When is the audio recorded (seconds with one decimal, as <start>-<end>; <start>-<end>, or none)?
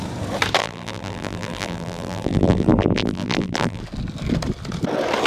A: 0.0-0.6; 3.8-5.3